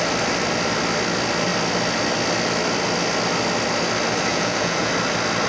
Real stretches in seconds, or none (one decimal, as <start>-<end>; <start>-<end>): 0.0-4.3; 4.9-5.5